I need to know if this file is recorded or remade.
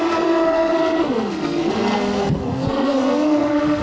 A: remade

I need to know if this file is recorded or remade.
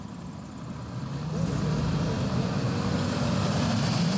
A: recorded